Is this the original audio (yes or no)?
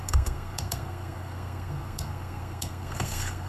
no